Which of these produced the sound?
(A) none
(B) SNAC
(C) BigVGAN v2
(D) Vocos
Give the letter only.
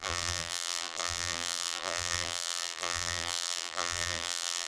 C